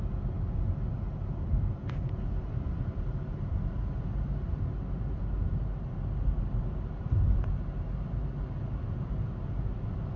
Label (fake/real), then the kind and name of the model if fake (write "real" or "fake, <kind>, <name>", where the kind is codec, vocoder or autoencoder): real